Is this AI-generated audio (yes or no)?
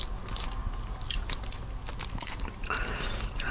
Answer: no